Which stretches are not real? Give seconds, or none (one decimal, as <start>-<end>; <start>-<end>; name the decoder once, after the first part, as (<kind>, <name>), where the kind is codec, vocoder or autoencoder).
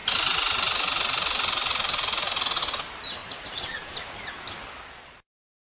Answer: 3.2-4.1 (vocoder, BigVGAN v2)